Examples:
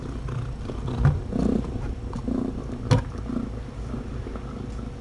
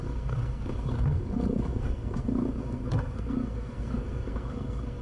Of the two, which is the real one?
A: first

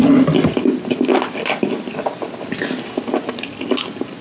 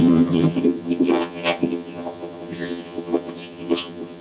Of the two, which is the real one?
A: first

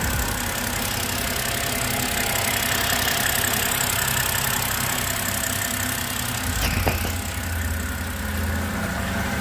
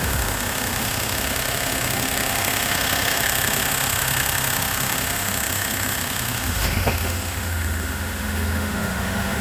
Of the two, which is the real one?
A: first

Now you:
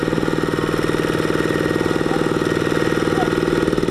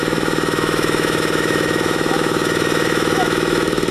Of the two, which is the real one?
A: first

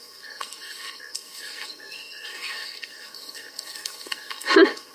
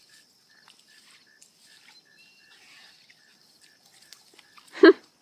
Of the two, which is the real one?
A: second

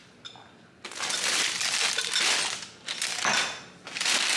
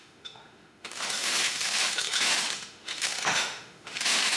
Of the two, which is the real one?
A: first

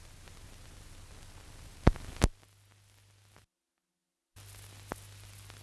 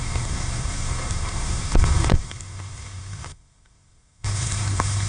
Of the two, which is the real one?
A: first